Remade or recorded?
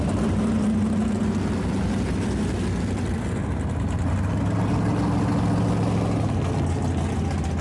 recorded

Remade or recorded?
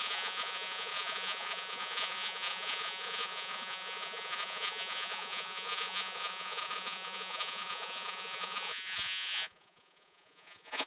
remade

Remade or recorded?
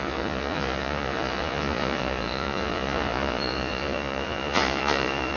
remade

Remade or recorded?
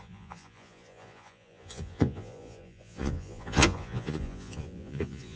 remade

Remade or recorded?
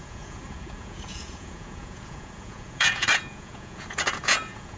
remade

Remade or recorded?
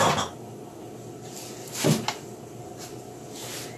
recorded